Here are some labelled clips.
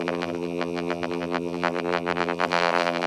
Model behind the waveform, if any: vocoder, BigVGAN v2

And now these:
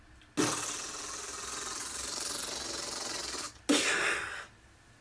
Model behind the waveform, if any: none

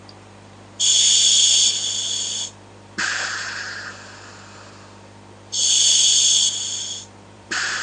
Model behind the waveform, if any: vocoder, BigVGAN v2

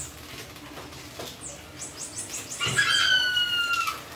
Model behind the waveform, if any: none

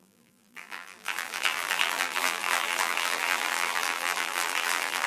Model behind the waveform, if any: vocoder, BigVGAN v2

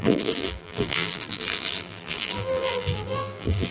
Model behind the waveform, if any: vocoder, BigVGAN v2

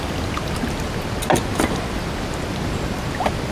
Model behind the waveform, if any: none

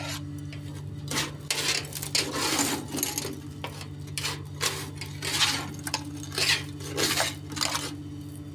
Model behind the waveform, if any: none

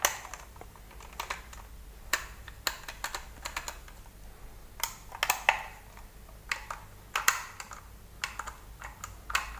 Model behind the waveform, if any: none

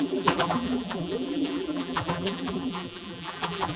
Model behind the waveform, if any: vocoder, BigVGAN v2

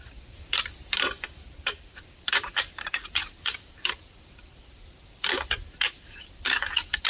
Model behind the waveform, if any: vocoder, BigVGAN v2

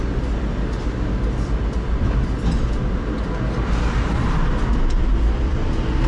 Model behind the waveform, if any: none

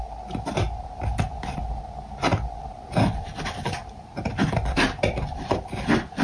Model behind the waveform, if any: none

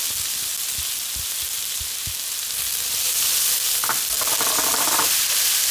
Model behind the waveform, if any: none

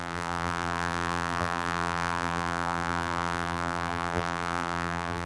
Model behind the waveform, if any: vocoder, BigVGAN v2